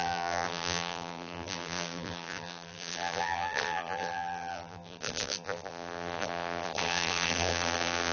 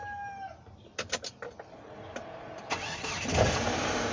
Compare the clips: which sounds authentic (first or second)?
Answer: second